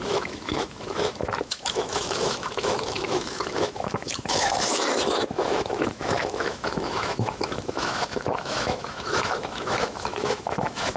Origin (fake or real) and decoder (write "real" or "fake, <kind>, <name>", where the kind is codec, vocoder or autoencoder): fake, autoencoder, DAC-VAE